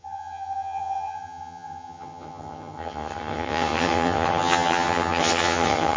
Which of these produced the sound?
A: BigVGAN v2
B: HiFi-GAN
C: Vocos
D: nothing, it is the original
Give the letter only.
B